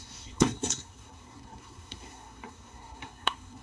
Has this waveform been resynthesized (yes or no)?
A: yes